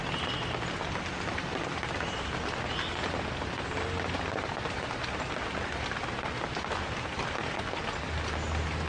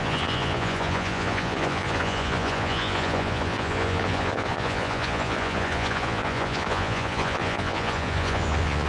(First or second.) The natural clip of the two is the first